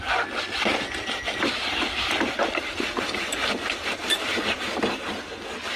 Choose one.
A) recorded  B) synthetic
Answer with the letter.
B